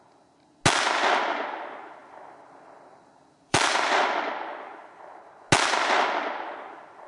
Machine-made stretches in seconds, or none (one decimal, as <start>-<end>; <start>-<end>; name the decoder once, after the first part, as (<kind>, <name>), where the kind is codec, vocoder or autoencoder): 2.0-4.0 (vocoder, BigVGAN v2)